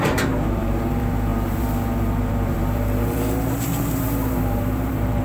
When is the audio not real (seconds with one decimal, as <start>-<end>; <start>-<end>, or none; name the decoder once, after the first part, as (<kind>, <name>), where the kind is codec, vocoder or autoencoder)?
0.0-5.2 (vocoder, BigVGAN v2)